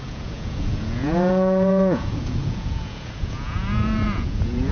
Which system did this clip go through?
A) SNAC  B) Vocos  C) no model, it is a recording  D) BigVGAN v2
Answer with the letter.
B